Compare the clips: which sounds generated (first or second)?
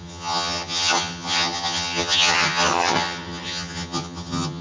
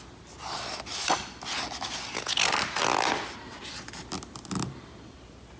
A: first